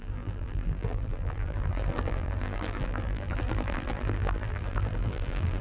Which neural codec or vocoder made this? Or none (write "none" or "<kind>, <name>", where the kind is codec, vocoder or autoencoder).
vocoder, BigVGAN v2